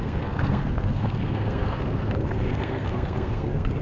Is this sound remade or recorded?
remade